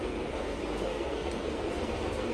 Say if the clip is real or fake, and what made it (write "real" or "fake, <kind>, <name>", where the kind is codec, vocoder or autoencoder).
fake, codec, SNAC